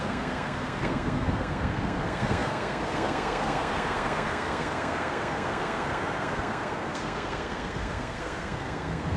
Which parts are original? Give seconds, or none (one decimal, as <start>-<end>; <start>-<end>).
none